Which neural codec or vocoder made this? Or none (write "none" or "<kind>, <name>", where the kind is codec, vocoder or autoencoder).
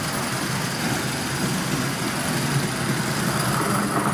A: none